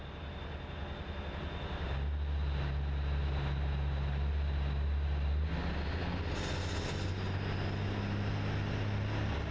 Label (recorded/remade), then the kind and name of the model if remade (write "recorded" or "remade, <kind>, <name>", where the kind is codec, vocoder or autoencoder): recorded